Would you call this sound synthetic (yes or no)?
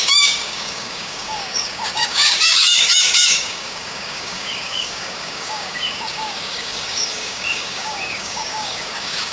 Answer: yes